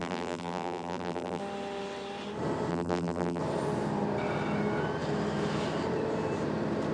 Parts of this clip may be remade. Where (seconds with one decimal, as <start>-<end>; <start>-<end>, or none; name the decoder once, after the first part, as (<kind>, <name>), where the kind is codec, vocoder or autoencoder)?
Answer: 0.0-1.4 (vocoder, BigVGAN v2); 2.7-3.4